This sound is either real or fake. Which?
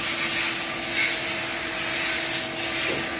real